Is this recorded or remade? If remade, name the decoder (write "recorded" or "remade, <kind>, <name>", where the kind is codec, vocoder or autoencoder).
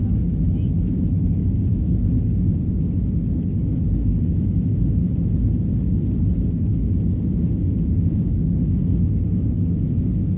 recorded